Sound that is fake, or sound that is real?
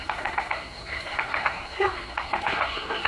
fake